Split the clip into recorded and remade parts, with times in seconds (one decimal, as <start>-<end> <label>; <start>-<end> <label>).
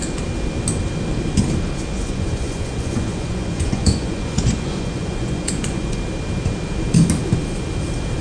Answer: 0.0-2.0 recorded; 2.0-6.0 remade; 6.0-8.2 recorded